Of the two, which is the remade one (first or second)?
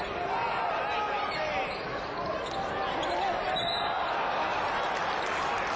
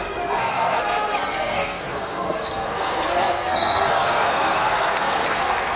second